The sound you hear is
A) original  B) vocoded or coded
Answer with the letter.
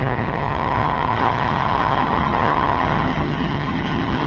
B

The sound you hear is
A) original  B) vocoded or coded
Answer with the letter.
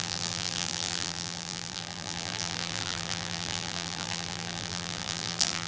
B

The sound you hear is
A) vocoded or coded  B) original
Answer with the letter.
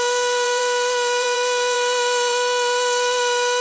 A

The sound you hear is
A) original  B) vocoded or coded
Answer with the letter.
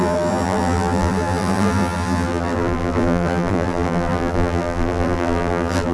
B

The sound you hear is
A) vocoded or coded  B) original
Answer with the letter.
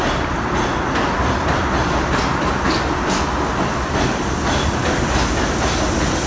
B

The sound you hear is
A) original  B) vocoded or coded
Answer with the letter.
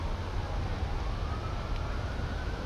A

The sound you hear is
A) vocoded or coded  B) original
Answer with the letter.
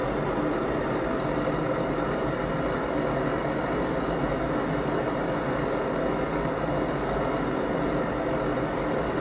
B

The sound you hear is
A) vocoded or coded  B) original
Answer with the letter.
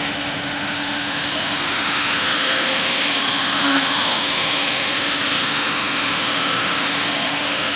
A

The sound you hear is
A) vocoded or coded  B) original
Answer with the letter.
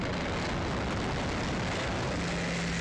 B